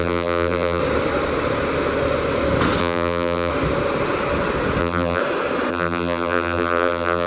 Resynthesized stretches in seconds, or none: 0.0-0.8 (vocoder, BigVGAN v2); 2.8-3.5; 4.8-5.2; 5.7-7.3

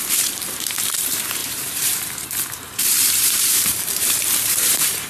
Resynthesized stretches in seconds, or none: 0.0-5.1 (vocoder, BigVGAN v2)

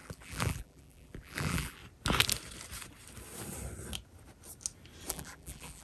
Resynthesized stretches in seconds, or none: 0.0-1.8 (vocoder, BigVGAN v2); 5.1-5.8

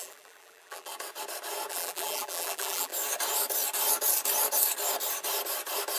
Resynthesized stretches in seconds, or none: 0.0-0.9 (vocoder, BigVGAN v2); 1.7-2.9

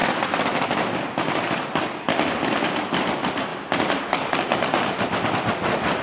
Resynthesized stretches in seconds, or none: 0.0-3.5 (vocoder, BigVGAN v2); 5.5-6.0

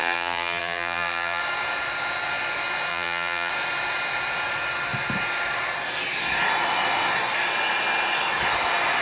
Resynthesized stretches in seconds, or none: 0.0-1.4 (vocoder, BigVGAN v2); 2.9-3.5

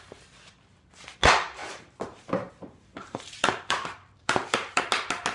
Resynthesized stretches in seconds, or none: 1.6-4.8 (vocoder, BigVGAN v2)